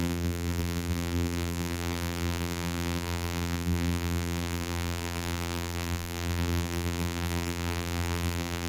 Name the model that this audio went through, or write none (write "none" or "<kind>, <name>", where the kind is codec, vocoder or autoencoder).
vocoder, BigVGAN v2